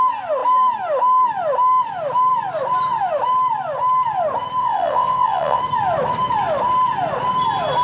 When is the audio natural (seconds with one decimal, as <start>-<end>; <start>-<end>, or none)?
0.0-4.6; 5.6-7.8